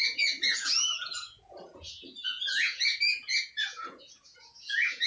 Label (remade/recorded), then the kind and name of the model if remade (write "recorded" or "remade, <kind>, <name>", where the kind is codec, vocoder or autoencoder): remade, vocoder, Vocos